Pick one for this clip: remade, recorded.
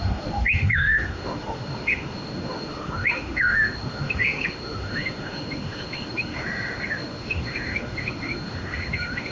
remade